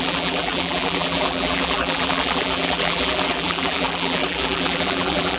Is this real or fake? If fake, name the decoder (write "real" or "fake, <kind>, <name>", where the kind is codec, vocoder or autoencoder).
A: fake, vocoder, BigVGAN v2